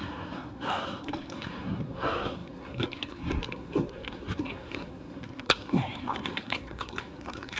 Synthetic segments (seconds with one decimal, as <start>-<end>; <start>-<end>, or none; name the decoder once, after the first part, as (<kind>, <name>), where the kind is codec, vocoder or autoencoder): 0.0-7.6 (codec, SNAC)